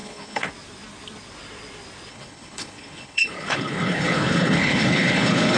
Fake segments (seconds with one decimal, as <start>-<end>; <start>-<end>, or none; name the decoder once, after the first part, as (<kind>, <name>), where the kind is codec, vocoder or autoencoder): 0.0-0.5 (codec, HILCodec); 2.1-5.6